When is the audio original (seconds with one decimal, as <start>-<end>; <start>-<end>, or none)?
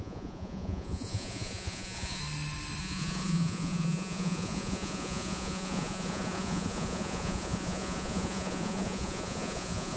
2.2-2.8